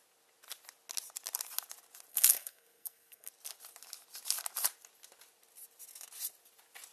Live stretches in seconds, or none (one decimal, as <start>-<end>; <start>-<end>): 0.0-2.1; 3.3-6.9